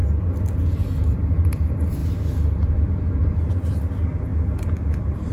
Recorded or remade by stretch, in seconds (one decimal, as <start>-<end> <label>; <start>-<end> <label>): 0.0-0.7 recorded; 0.7-2.0 remade; 2.0-3.5 recorded; 3.5-5.3 remade

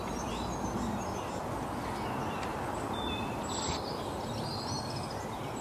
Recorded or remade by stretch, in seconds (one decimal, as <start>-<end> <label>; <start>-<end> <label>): 0.0-2.5 recorded; 2.5-3.4 remade; 3.4-5.6 recorded

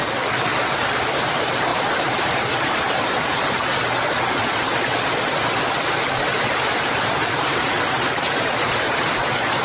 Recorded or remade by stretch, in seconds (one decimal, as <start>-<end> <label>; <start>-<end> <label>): 0.0-0.7 recorded; 0.7-3.6 remade; 3.6-6.5 recorded; 6.5-9.6 remade

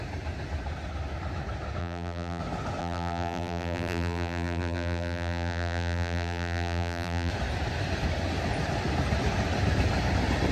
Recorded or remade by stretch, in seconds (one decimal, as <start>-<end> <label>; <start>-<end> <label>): 0.0-1.8 recorded; 1.8-2.4 remade; 2.4-2.8 recorded; 2.8-7.3 remade; 7.3-10.5 recorded

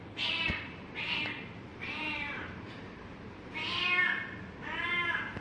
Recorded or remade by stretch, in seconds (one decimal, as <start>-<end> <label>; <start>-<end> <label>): 0.0-1.7 recorded; 1.7-3.8 remade; 3.8-5.4 recorded